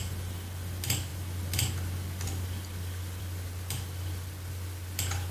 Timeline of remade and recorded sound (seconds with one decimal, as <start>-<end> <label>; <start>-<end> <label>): 0.0-5.3 recorded